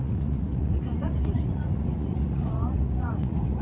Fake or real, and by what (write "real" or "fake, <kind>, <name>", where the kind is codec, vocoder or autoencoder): fake, vocoder, Vocos